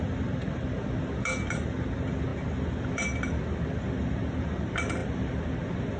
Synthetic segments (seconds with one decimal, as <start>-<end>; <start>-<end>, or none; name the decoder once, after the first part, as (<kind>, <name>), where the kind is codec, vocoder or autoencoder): none